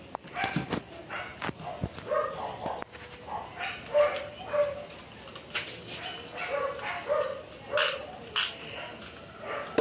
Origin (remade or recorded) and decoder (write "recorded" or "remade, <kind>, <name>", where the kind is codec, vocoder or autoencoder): recorded